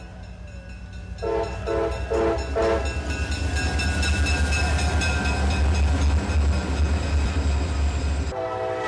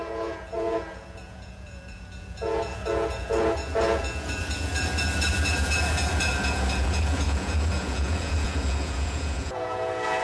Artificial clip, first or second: second